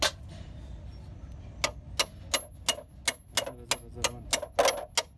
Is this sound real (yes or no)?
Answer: yes